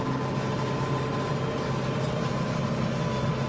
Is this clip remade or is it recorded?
recorded